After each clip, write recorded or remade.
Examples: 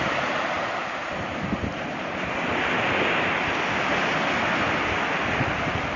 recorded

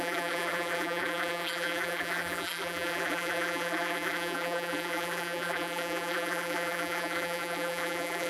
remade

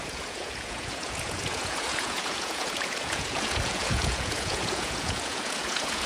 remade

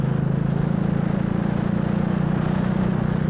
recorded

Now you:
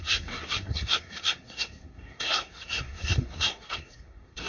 remade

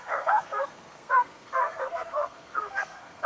remade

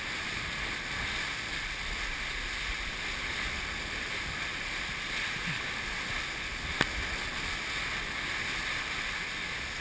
recorded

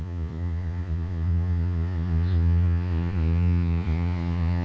remade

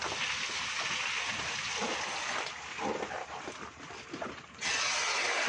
recorded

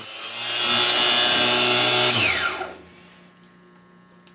recorded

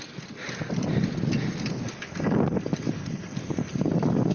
recorded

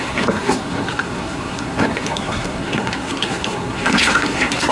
remade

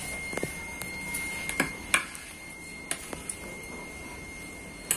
recorded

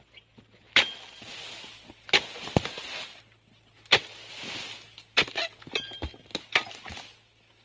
recorded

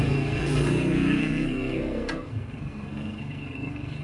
remade